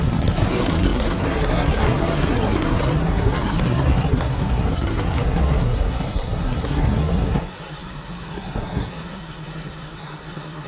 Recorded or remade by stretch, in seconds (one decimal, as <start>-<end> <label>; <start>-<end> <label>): 0.0-10.7 remade